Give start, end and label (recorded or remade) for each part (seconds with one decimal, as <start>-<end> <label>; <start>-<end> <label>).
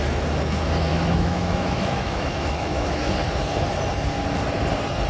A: 0.0-0.9 recorded; 0.9-3.1 remade; 3.1-5.1 recorded